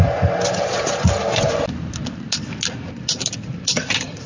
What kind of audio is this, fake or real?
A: real